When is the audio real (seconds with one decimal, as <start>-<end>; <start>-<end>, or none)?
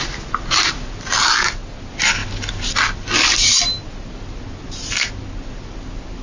0.0-6.2